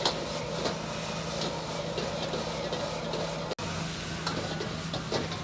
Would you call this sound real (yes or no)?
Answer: yes